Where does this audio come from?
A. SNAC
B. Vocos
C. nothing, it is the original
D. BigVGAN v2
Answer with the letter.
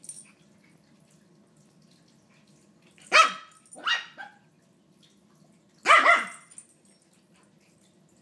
C